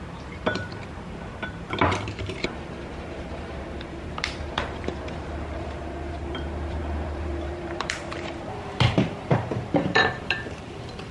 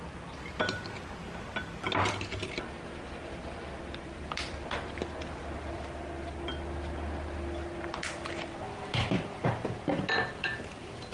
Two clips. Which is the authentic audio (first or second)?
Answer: second